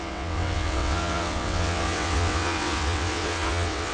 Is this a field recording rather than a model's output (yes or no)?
no